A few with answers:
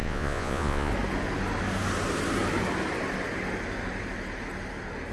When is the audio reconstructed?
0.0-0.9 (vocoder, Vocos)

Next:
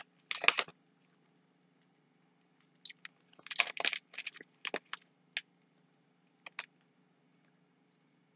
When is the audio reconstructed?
none

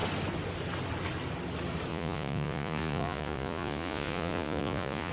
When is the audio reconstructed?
1.9-5.1 (vocoder, Vocos)

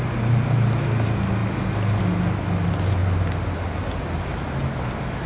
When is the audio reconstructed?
none

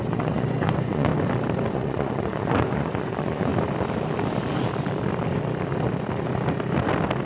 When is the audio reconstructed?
0.0-1.1 (vocoder, Vocos); 1.7-3.5

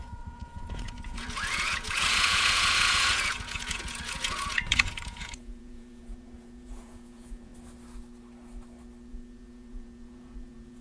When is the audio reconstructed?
0.0-7.5 (vocoder, Vocos); 9.1-10.8